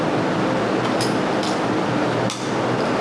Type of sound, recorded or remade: recorded